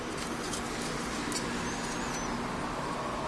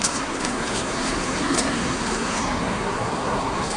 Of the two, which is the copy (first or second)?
second